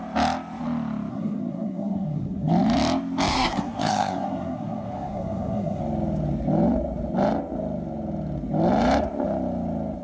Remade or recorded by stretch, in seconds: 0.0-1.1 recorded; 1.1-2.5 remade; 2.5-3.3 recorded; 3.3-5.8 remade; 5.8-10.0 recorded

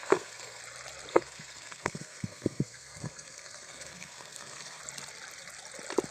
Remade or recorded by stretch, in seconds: 0.0-0.6 remade; 0.6-1.1 recorded; 1.1-4.8 remade; 4.8-6.1 recorded

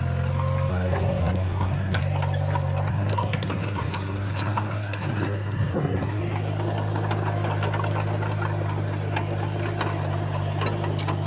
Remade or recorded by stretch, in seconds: 0.0-0.7 recorded; 0.7-2.0 remade; 2.0-2.9 recorded; 2.9-6.2 remade; 6.2-11.3 recorded

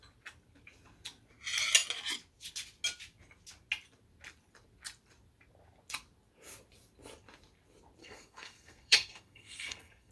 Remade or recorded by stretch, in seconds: 0.0-8.0 recorded; 8.0-10.1 remade

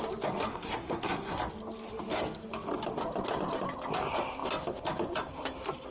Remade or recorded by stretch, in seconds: 0.0-0.5 recorded; 0.5-1.4 remade; 1.4-5.9 recorded